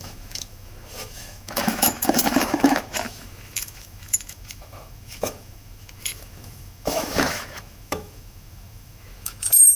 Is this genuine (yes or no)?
no